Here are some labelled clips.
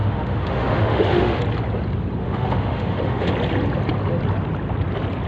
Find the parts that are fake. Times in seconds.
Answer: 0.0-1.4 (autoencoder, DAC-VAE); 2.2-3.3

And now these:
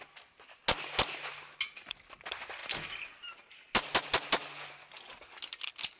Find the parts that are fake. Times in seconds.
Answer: none

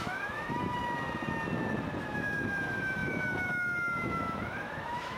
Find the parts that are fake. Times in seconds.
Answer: 0.0-0.8 (autoencoder, DAC-VAE); 2.1-5.2

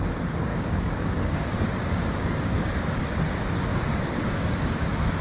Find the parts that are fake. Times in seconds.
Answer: 0.5-3.0 (codec, DAC); 3.7-5.2

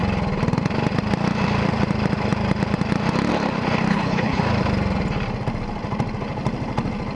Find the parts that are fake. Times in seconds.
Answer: 3.9-4.4 (codec, HILCodec)

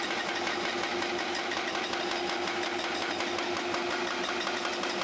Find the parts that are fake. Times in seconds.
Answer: none

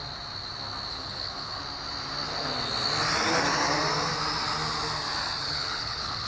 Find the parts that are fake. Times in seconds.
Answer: 0.9-1.6 (codec, HILCodec); 5.4-6.3